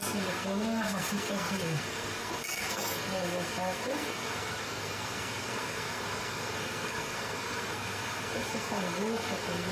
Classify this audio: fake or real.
fake